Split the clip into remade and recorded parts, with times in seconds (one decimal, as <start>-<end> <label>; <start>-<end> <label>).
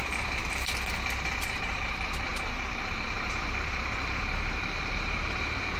0.0-0.4 remade; 0.4-1.4 recorded; 1.4-5.8 remade